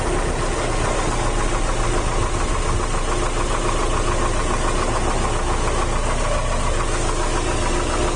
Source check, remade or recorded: recorded